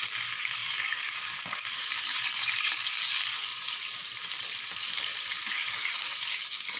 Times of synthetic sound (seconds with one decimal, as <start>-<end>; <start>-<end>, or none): 0.0-3.5; 5.5-6.8